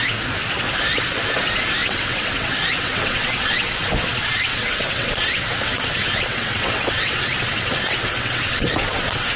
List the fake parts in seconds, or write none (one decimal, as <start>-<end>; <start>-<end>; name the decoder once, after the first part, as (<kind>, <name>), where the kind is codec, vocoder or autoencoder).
1.8-3.9 (vocoder, WaveNeXt); 4.5-9.4